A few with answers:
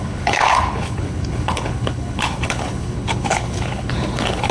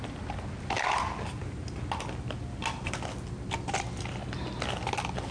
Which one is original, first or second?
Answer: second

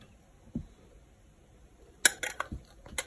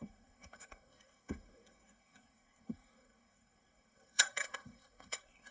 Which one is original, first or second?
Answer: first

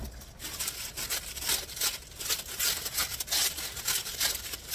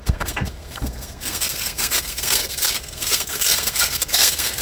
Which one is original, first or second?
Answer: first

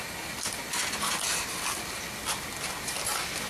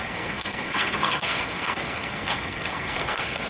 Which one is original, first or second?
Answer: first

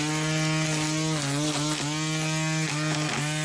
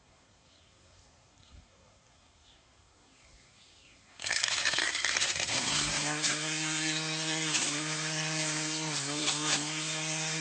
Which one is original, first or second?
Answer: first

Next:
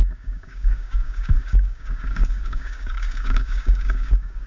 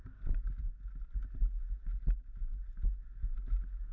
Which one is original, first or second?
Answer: second